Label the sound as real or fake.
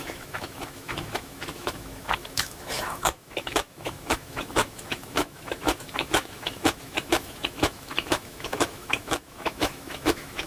fake